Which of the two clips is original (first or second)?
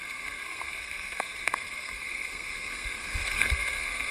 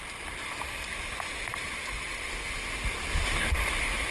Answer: second